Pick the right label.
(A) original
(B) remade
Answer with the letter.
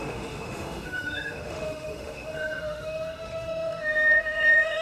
B